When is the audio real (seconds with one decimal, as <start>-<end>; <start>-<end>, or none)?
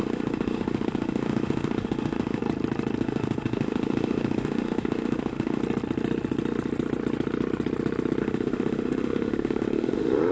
2.4-3.0; 5.6-8.2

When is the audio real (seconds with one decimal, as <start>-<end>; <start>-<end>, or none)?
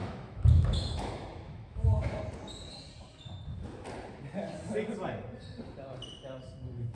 2.2-7.0